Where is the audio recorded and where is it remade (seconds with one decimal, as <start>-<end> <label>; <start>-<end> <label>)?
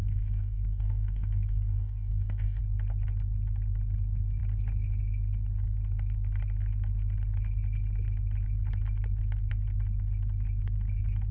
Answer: 0.0-2.6 remade; 2.6-11.3 recorded